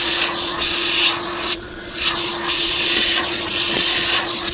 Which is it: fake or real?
fake